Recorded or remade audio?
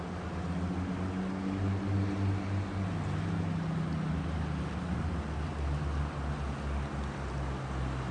recorded